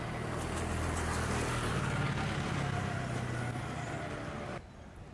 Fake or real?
real